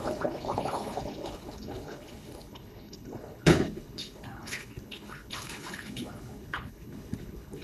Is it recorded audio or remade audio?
remade